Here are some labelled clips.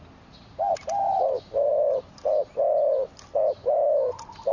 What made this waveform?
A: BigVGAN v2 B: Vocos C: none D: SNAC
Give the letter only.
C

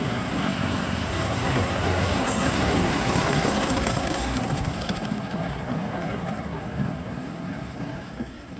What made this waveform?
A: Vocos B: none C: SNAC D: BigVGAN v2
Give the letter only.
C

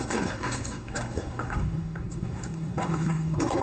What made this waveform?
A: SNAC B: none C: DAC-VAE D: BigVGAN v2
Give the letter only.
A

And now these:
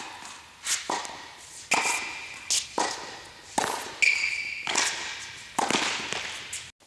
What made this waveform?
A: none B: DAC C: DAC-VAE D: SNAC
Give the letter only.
A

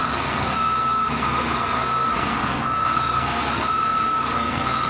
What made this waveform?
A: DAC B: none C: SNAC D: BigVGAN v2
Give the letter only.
C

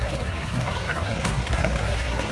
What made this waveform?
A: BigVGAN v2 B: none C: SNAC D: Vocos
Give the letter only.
C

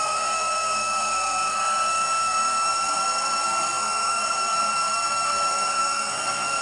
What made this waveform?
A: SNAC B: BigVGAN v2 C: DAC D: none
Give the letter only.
A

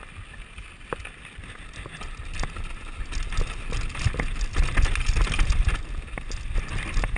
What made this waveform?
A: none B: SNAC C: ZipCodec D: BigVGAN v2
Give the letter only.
A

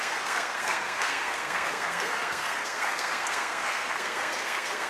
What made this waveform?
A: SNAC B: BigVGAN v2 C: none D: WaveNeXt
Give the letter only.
A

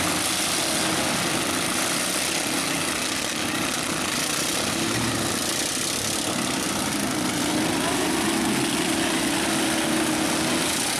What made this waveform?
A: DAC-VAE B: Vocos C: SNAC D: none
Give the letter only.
D